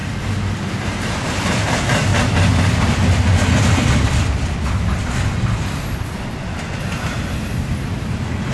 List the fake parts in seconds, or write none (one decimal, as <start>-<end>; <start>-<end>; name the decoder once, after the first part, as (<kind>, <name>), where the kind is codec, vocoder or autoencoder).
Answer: 0.8-2.1 (vocoder, BigVGAN v2); 6.8-8.5